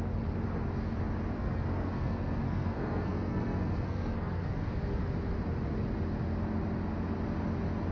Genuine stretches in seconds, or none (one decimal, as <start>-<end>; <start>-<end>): 0.0-1.4; 5.0-7.9